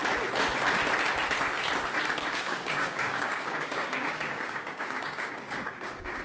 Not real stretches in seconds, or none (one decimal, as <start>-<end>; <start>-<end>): 2.2-6.2